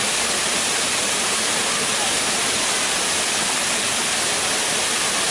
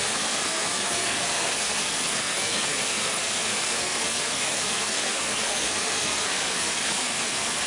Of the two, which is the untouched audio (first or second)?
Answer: first